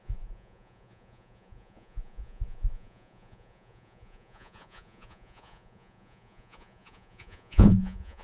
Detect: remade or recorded remade